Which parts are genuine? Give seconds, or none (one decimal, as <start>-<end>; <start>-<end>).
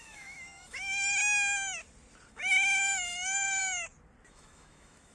1.2-2.3; 3.6-4.3